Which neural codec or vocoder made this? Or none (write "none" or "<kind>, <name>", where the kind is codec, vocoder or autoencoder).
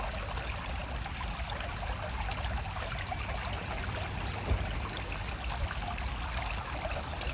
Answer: none